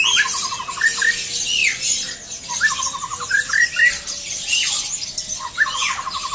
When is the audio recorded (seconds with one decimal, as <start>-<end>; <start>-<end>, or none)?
0.0-6.3

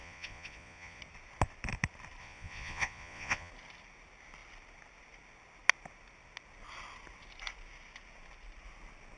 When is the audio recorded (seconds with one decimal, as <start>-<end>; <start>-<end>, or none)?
1.0-2.2; 3.5-9.2

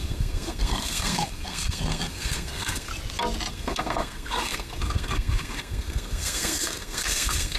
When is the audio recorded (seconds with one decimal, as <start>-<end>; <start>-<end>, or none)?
2.9-3.5

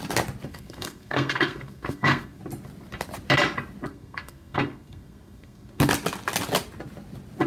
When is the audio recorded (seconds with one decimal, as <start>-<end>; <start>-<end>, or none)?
0.0-0.5; 2.4-3.9; 5.8-7.5